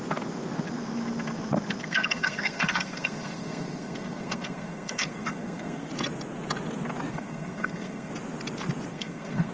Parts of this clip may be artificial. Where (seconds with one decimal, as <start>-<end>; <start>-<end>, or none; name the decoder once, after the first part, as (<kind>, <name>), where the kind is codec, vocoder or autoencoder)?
1.8-5.9 (codec, SNAC); 7.1-8.1; 8.9-9.5

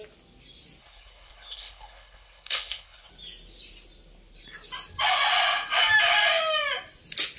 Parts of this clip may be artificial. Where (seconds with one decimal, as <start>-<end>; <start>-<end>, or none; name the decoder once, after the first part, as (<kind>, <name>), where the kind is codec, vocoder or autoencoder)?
0.8-3.1 (codec, HILCodec)

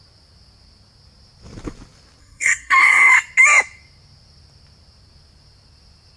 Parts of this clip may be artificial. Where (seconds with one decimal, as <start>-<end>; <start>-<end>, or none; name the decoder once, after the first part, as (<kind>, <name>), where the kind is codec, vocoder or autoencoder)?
2.2-3.1 (codec, SNAC)